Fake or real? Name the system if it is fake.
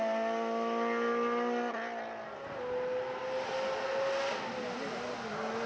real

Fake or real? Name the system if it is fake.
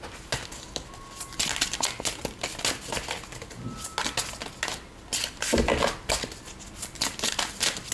real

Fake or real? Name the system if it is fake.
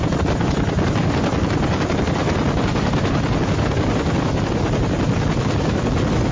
real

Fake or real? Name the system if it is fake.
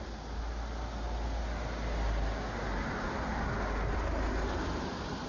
real